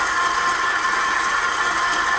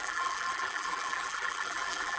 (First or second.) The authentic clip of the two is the first